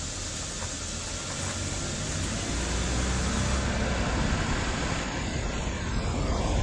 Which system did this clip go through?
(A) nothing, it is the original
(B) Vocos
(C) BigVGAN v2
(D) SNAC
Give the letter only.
A